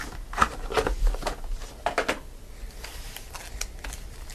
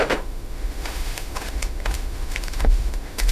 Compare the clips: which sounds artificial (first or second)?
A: second